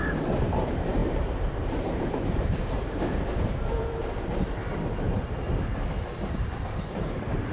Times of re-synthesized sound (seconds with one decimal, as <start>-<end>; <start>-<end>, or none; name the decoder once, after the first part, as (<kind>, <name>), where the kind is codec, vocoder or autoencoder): 0.5-4.6 (vocoder, BigVGAN v2); 6.4-7.5